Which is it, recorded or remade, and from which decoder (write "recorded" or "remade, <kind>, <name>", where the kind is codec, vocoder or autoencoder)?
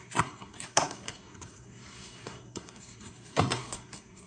remade, codec, SNAC